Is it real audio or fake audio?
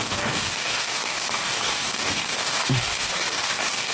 fake